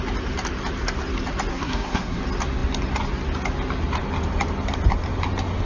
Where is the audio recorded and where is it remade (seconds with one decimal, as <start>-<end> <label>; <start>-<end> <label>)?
0.0-1.5 recorded; 1.5-2.2 remade; 2.2-5.7 recorded

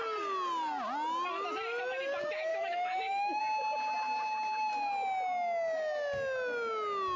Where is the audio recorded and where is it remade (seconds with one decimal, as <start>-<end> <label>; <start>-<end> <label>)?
0.0-2.5 recorded; 2.5-3.4 remade; 3.4-7.2 recorded

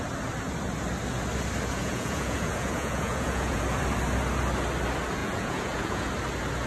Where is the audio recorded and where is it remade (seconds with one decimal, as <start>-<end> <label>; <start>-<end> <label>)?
0.0-1.8 recorded; 1.8-3.6 remade; 3.6-5.2 recorded; 5.2-6.1 remade; 6.1-6.7 recorded

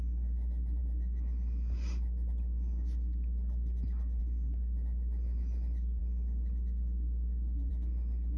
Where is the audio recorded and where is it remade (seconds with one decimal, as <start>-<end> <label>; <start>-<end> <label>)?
0.0-8.4 recorded

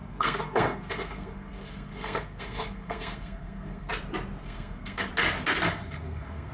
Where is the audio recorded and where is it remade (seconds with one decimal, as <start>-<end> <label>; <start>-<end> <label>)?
0.0-3.9 remade; 3.9-4.4 recorded; 4.4-5.1 remade; 5.1-5.7 recorded; 5.7-6.5 remade